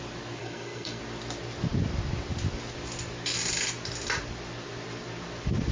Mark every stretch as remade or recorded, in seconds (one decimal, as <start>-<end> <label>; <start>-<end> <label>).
0.0-0.4 recorded; 0.4-1.0 remade; 1.0-5.7 recorded